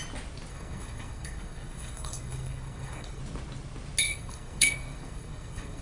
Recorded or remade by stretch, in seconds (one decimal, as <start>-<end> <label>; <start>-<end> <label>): 0.0-0.5 recorded; 0.5-3.2 remade; 3.2-4.1 recorded; 4.1-5.8 remade